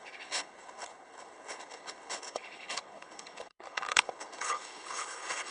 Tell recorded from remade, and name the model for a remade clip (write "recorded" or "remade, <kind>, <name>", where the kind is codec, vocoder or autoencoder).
remade, codec, HILCodec